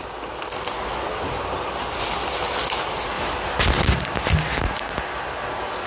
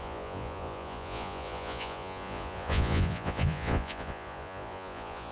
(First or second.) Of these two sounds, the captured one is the first